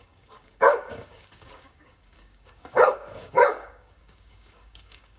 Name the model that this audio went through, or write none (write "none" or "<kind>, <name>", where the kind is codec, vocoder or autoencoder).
codec, DAC